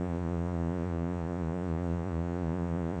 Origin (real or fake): fake